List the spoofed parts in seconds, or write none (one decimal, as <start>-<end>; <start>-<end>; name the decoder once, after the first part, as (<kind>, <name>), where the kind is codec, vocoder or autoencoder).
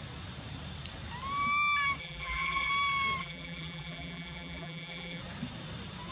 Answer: 2.0-2.7 (vocoder, BigVGAN v2); 3.2-5.2